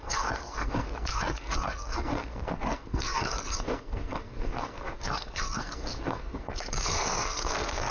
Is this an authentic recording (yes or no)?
no